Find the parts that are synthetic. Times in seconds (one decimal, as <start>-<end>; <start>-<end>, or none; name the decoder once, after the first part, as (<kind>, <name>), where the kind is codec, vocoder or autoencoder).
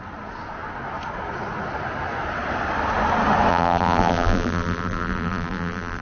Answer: 3.5-6.0 (vocoder, BigVGAN v2)